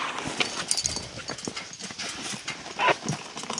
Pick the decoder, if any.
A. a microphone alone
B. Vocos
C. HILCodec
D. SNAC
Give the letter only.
A